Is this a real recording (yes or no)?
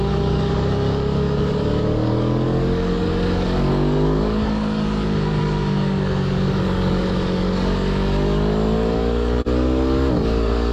no